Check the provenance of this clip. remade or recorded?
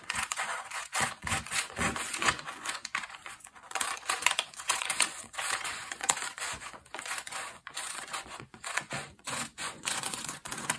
remade